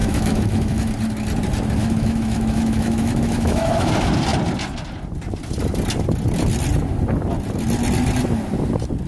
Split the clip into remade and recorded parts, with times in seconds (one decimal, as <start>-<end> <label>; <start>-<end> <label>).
0.0-0.9 remade; 0.9-1.8 recorded; 1.8-3.9 remade; 3.9-9.1 recorded